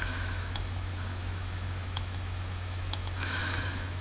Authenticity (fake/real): fake